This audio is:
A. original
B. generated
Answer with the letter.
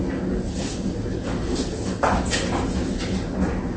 A